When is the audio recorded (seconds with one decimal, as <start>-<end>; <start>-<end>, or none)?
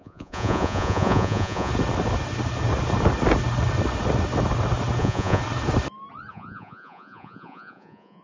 1.7-5.0; 5.4-6.3